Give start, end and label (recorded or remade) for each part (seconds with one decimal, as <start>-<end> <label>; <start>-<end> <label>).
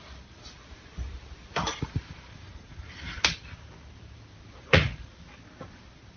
0.0-2.3 recorded; 2.3-2.9 remade; 2.9-4.6 recorded; 4.6-5.1 remade; 5.1-6.2 recorded